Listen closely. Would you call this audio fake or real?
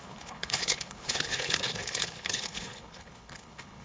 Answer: fake